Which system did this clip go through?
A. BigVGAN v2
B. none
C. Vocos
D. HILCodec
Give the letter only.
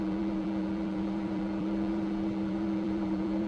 A